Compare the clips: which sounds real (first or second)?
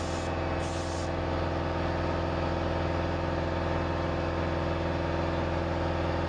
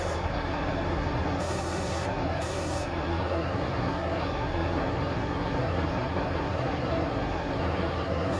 first